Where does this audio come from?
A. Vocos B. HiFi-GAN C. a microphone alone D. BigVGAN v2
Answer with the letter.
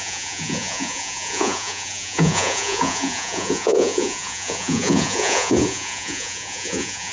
A